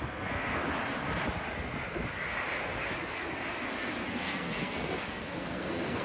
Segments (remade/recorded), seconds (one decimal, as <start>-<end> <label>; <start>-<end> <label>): 0.0-0.6 remade; 0.6-4.1 recorded; 4.1-6.0 remade

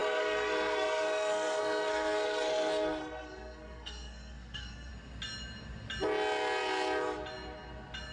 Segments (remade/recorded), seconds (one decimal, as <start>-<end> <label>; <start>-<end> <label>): 0.0-4.9 remade; 4.9-8.1 recorded